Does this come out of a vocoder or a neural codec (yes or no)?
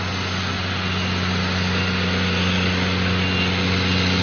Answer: no